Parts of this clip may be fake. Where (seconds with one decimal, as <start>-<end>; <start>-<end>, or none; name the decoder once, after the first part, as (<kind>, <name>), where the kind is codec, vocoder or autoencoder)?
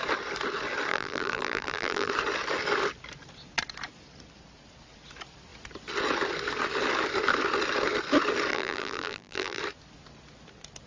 0.9-2.1 (vocoder, BigVGAN v2); 8.5-9.6